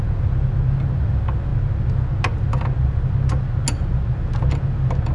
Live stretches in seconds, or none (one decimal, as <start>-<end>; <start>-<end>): 0.0-5.1

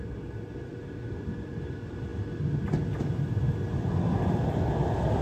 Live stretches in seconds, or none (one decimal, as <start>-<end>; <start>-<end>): 0.0-5.2

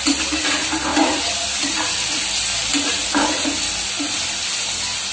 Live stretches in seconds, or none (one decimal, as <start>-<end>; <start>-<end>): 0.0-5.1

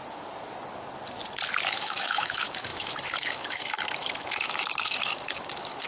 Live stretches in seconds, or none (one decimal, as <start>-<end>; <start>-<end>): 0.0-1.7

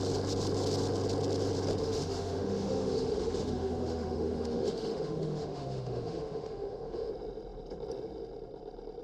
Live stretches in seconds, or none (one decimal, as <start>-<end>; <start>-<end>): 0.0-1.8; 7.1-9.0

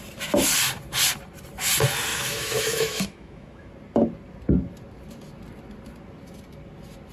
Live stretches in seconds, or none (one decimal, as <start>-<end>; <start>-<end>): 0.0-2.1; 3.7-7.1

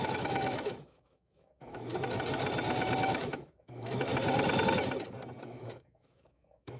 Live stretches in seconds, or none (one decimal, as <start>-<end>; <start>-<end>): 1.9-3.0; 4.1-5.4

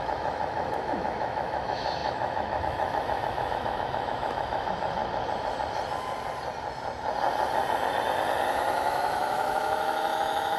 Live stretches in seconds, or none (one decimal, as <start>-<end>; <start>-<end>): 5.0-8.5